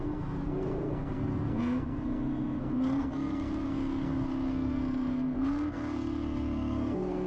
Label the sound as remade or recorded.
remade